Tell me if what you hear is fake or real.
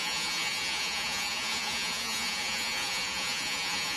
fake